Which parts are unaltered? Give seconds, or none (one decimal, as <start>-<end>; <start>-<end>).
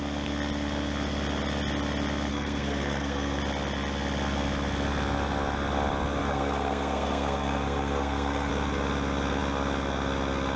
0.0-2.3; 3.4-6.2; 8.5-10.6